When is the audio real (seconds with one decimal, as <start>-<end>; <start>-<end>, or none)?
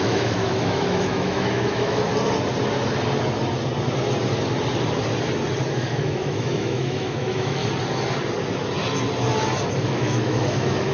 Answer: 2.1-5.7; 7.6-9.8